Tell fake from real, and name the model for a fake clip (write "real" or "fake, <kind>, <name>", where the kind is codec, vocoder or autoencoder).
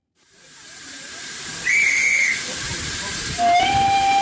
fake, vocoder, BigVGAN v2